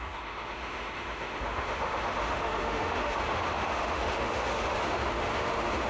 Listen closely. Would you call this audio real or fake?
fake